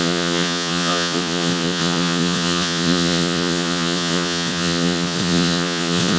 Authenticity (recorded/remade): remade